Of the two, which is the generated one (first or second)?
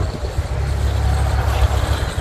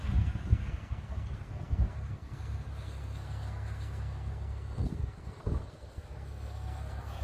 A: second